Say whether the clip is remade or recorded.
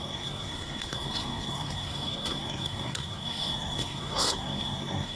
remade